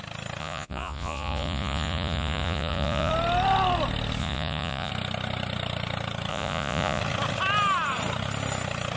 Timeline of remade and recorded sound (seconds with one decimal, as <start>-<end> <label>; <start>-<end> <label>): 0.0-0.4 recorded; 0.4-3.1 remade; 3.1-4.2 recorded; 4.2-4.9 remade; 4.9-6.3 recorded; 6.3-7.0 remade; 7.0-9.0 recorded